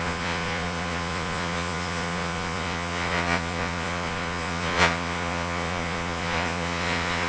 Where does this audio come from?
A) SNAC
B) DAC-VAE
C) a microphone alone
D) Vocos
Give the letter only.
D